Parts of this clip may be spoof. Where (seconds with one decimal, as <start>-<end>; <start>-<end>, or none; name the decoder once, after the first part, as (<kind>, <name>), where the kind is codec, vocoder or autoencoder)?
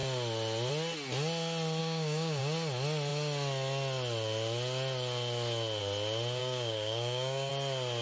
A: 1.8-2.4 (codec, DAC); 6.4-7.5